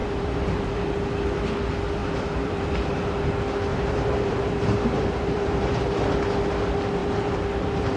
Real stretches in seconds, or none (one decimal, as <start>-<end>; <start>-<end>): 0.8-2.0; 2.7-3.7; 5.8-7.0